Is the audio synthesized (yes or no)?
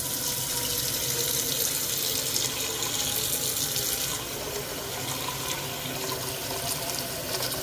no